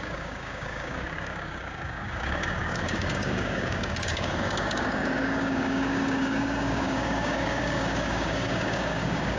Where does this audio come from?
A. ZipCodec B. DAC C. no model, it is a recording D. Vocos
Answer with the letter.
B